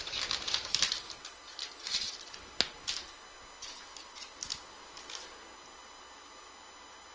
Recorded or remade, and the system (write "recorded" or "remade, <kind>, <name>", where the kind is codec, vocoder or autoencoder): recorded